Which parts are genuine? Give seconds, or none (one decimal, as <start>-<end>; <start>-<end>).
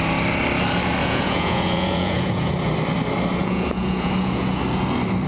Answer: 0.0-1.0; 2.5-3.4; 4.6-5.3